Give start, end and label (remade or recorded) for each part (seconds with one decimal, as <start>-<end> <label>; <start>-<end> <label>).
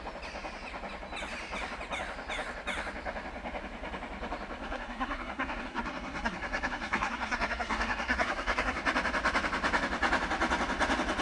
0.0-4.6 recorded; 4.6-8.8 remade; 8.8-11.2 recorded